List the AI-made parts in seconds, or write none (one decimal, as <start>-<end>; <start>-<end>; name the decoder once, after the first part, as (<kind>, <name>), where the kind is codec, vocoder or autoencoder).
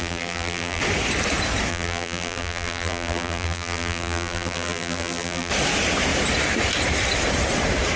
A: 0.0-0.8 (vocoder, BigVGAN v2); 1.7-5.5